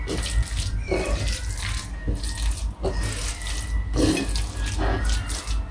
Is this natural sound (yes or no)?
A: yes